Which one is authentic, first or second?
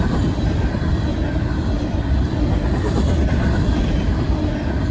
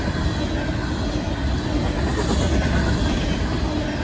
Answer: second